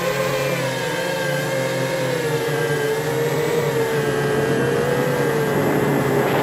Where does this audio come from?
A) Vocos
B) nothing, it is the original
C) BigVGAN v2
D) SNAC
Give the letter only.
B